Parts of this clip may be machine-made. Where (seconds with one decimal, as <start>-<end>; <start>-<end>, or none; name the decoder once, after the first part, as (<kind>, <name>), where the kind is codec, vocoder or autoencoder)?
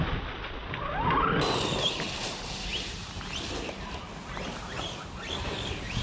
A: 2.7-4.4 (vocoder, BigVGAN v2)